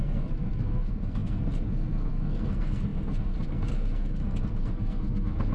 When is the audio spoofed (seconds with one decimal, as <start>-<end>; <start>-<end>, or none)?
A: 0.0-5.5